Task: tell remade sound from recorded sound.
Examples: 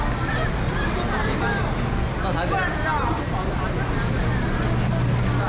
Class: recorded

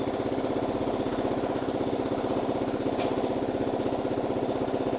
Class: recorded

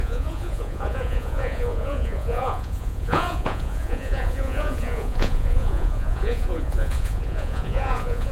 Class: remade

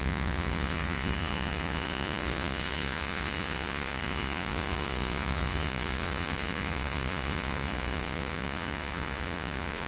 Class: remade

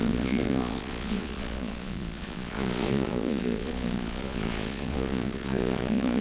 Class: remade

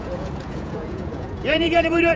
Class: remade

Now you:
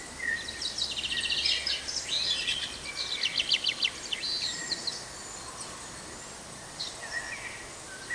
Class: recorded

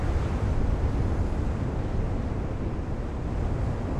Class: recorded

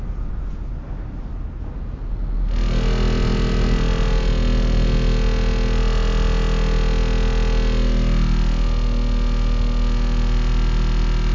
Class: recorded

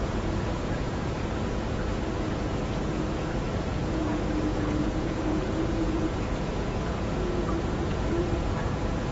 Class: remade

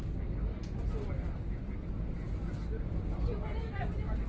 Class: recorded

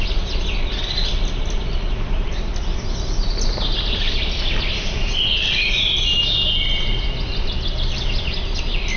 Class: recorded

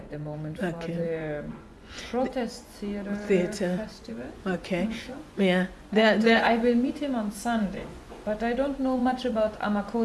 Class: remade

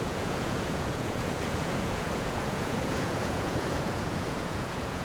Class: remade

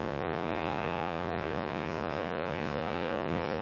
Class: remade